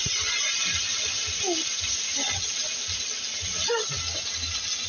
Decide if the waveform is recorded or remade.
recorded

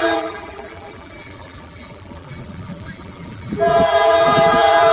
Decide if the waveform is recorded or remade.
remade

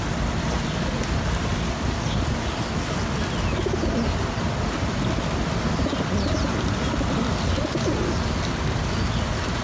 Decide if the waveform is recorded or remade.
recorded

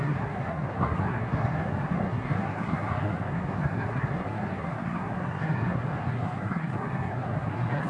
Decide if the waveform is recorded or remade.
remade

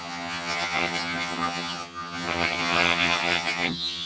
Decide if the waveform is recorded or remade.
remade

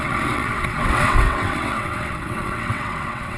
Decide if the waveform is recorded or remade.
remade